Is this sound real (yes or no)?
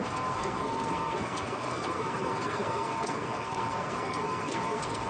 no